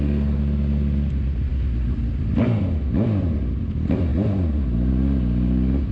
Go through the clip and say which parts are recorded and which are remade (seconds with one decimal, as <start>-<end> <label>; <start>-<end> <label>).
0.0-5.9 recorded